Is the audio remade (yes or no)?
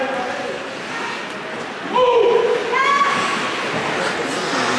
no